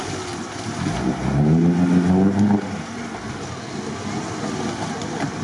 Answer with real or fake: real